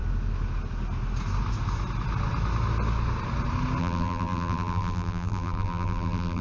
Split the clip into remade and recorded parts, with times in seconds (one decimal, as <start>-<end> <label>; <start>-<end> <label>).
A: 0.0-3.8 recorded; 3.8-6.4 remade